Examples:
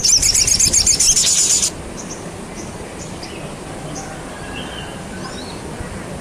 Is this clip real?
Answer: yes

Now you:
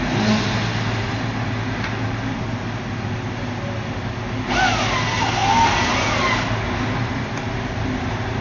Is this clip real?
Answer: yes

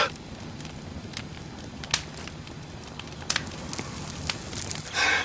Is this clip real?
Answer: yes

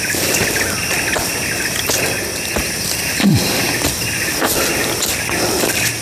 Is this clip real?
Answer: yes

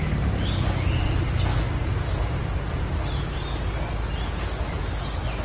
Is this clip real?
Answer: yes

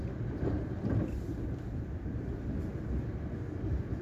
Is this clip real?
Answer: no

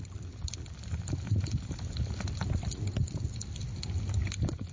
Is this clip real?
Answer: yes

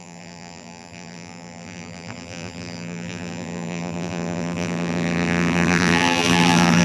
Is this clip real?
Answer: no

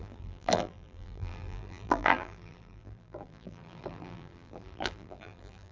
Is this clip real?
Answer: no